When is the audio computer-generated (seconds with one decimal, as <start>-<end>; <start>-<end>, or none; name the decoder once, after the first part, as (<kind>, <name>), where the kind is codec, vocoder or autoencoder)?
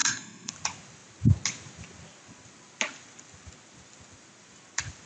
0.0-0.5 (codec, SNAC)